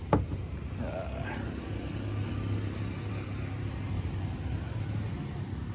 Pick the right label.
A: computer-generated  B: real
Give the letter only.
B